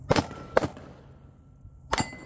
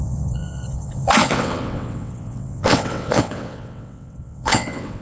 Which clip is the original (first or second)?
first